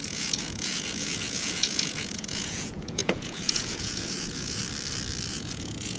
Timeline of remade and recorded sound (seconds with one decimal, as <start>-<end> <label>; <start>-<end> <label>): 0.0-4.6 remade; 4.6-5.3 recorded; 5.3-6.0 remade